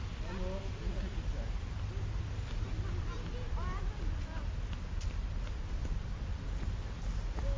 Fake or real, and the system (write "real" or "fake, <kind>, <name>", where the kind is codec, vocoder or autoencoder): real